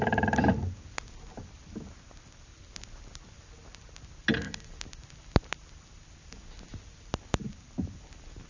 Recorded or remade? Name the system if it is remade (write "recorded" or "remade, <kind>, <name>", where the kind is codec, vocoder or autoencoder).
recorded